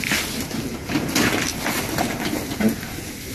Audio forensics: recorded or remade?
recorded